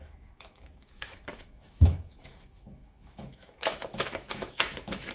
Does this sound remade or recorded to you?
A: remade